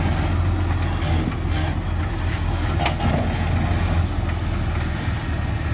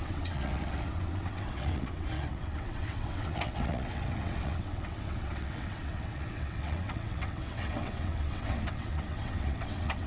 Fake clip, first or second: second